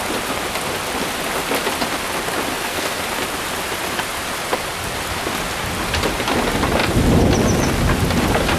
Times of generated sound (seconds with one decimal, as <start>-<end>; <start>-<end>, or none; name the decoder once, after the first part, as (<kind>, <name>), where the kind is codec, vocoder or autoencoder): 2.5-3.0 (codec, SNAC)